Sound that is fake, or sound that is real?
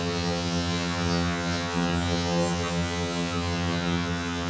fake